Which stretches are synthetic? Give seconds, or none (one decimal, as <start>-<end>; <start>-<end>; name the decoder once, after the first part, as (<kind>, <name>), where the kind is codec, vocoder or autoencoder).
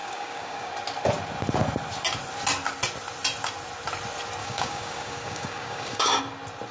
0.0-0.7 (codec, DAC); 4.4-6.2